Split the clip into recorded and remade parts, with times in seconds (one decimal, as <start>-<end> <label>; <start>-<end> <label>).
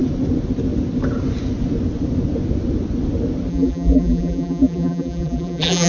0.0-3.5 recorded; 3.5-5.9 remade